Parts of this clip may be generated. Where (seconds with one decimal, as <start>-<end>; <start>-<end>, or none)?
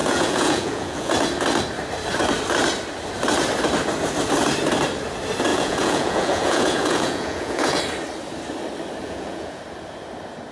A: 0.0-1.1; 5.5-7.8; 9.0-9.6